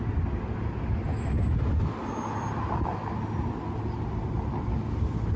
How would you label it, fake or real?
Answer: real